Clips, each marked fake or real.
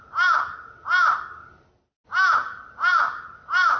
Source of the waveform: real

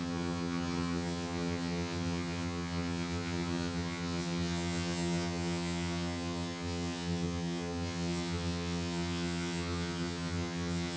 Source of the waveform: fake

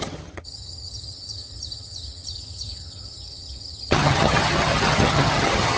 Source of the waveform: fake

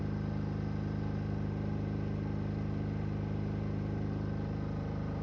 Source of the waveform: real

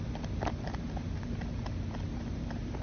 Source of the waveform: real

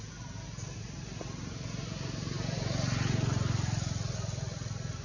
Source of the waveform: real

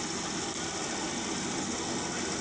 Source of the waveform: real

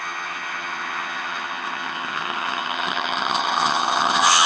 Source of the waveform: fake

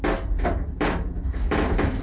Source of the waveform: real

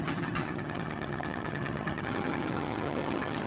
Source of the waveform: fake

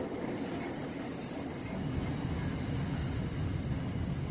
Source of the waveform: real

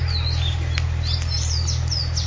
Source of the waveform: real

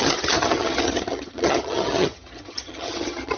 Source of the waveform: fake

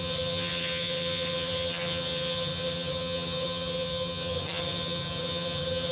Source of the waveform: fake